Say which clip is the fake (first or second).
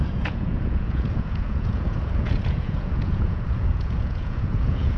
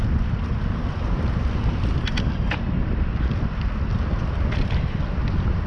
first